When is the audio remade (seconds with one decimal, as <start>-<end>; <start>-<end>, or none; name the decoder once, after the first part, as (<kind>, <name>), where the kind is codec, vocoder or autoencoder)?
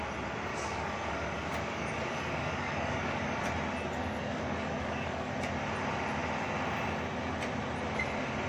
0.5-3.4 (codec, DAC); 4.0-5.3